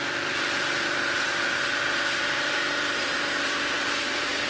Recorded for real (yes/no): no